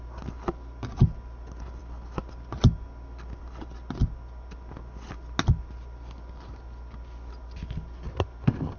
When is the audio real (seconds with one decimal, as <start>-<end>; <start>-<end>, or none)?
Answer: 0.0-8.8